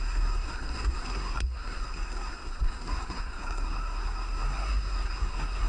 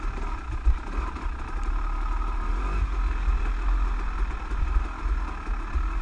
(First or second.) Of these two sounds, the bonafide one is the second